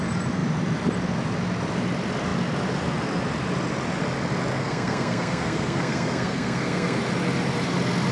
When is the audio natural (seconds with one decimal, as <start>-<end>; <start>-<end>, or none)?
0.0-4.5; 7.0-8.1